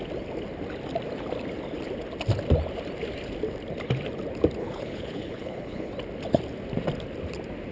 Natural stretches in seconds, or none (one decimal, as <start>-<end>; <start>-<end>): 0.0-4.6; 5.9-7.7